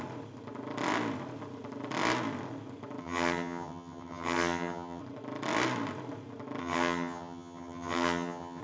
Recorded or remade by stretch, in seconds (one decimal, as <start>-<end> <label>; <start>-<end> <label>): 0.0-3.0 recorded; 3.0-5.0 remade; 5.0-6.6 recorded; 6.6-8.6 remade